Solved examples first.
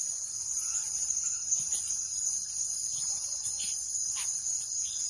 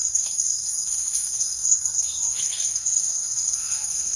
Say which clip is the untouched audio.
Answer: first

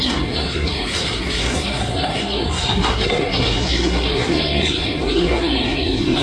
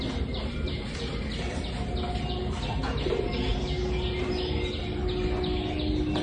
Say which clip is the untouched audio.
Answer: second